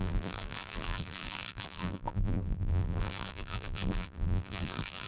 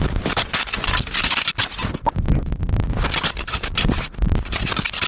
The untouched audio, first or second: second